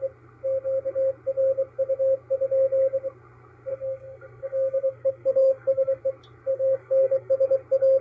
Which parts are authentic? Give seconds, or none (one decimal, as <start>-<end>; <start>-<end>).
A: 0.0-3.7; 6.0-6.5; 7.3-8.0